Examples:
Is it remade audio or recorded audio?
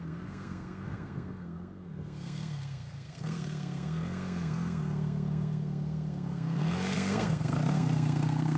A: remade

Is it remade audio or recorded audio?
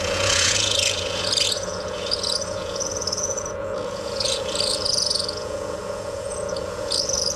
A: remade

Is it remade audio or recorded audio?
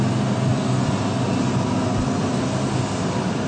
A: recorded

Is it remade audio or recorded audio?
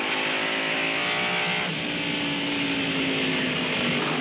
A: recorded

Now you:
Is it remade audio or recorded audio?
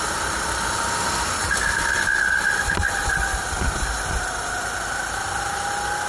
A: recorded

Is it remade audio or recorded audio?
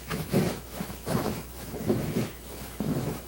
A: remade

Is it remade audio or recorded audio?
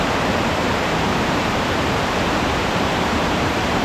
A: remade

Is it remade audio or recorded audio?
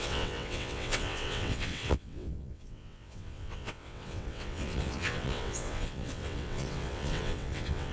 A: remade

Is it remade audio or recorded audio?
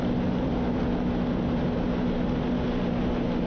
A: recorded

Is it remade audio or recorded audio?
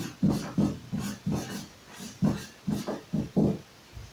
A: recorded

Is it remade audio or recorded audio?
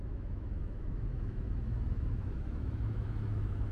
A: remade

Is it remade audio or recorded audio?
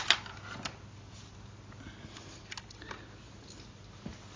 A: recorded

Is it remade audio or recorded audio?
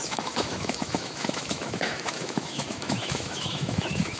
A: remade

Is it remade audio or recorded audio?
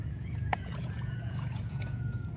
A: remade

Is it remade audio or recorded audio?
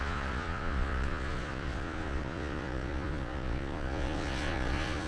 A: remade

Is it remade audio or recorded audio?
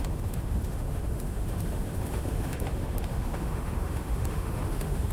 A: remade